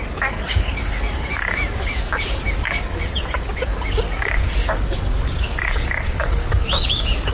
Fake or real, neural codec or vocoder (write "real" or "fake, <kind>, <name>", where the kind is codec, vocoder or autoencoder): fake, codec, DAC